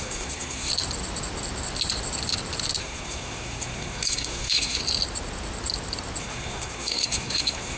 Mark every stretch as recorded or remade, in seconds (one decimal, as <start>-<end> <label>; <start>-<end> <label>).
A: 0.0-0.7 remade; 0.7-2.8 recorded; 2.8-4.8 remade; 4.8-6.2 recorded; 6.2-7.8 remade

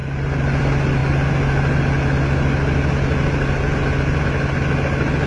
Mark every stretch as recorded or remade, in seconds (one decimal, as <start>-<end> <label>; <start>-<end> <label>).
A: 0.0-5.3 recorded

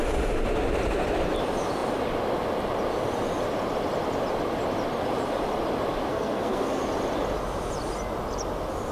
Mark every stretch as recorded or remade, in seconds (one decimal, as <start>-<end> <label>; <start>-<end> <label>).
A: 0.0-6.1 recorded; 6.1-6.8 remade; 6.8-8.9 recorded

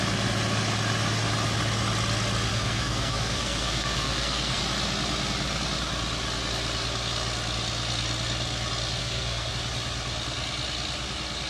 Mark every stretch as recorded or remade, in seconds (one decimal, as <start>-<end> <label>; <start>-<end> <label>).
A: 0.0-2.5 recorded; 2.5-4.6 remade; 4.6-9.0 recorded; 9.0-9.5 remade; 9.5-11.5 recorded

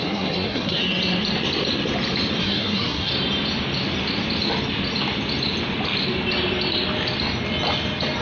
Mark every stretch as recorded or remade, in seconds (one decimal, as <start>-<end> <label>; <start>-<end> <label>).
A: 0.0-0.8 remade; 0.8-2.4 recorded; 2.4-3.1 remade; 3.1-8.2 recorded

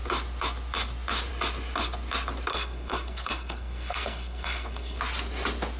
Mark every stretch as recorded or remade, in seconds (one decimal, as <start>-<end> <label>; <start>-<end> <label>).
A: 0.0-2.5 recorded; 2.5-5.0 remade; 5.0-5.8 recorded

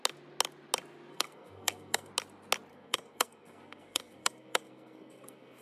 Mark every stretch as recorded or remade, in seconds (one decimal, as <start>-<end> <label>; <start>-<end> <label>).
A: 0.0-1.1 recorded; 1.1-2.1 remade; 2.1-2.7 recorded; 2.7-5.6 remade